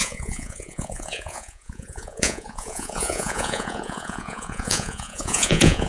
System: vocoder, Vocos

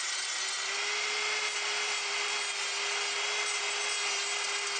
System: none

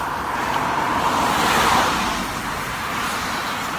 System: none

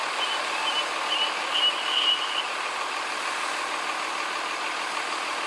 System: none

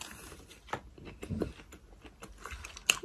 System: none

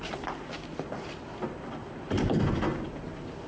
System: none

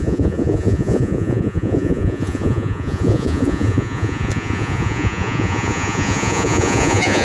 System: vocoder, Vocos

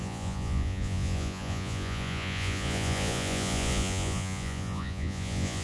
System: vocoder, Vocos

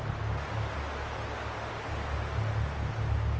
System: none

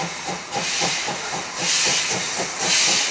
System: none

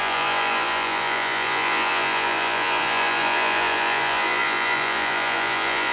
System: vocoder, Vocos